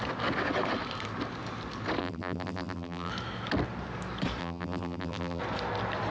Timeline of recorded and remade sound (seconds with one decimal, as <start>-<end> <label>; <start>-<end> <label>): 0.0-2.0 recorded; 2.0-3.1 remade; 3.1-4.4 recorded; 4.4-5.4 remade; 5.4-6.1 recorded